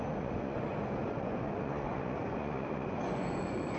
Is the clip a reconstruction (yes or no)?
yes